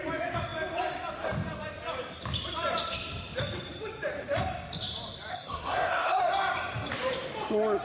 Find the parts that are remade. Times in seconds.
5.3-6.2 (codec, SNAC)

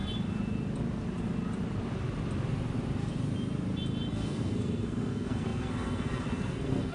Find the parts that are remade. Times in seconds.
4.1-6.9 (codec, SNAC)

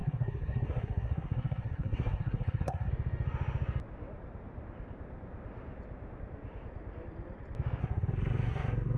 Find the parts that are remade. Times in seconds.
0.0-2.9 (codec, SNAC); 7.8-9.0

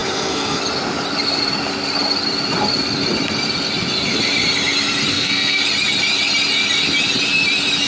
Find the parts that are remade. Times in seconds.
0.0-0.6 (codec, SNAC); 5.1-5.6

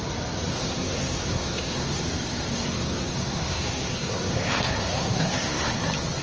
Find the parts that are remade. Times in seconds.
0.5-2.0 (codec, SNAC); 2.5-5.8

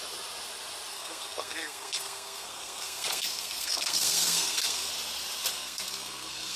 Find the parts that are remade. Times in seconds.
0.9-4.9 (codec, SNAC); 5.5-6.6

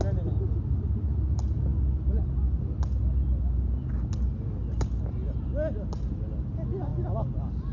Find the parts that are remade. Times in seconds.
none

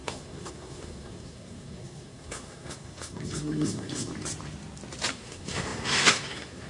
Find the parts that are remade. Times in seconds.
0.0-4.1 (codec, SNAC); 5.1-6.7